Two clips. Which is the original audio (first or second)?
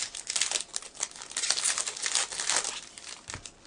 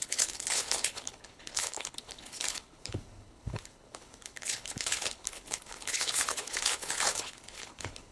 first